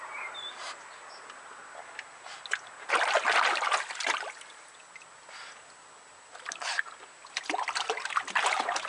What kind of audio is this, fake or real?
real